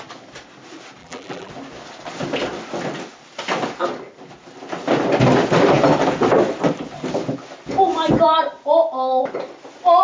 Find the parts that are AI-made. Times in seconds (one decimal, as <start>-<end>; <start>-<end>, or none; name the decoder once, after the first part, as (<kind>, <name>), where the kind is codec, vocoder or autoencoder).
1.0-1.5 (vocoder, BigVGAN v2)